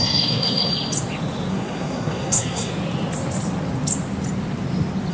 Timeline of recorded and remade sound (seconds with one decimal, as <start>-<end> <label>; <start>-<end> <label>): 0.0-0.7 remade; 0.7-1.5 recorded; 1.5-2.7 remade; 2.7-5.1 recorded